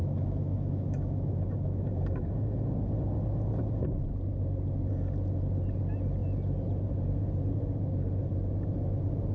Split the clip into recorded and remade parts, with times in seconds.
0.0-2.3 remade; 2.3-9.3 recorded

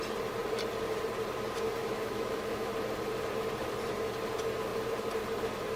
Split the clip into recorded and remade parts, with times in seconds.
0.0-1.8 recorded; 1.8-2.7 remade; 2.7-5.8 recorded